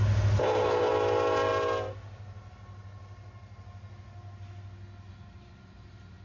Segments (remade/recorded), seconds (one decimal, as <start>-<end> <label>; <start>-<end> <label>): 0.0-0.4 recorded; 0.4-0.9 remade; 0.9-6.2 recorded